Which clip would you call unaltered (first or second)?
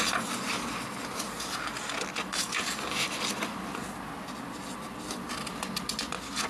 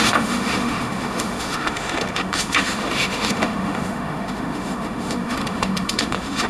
first